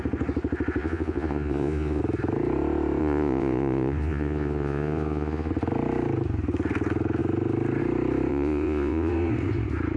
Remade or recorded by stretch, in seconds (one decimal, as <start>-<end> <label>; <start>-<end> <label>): 0.0-0.8 recorded; 0.8-2.0 remade; 2.0-3.0 recorded; 3.0-5.5 remade; 5.5-8.3 recorded; 8.3-9.1 remade; 9.1-10.0 recorded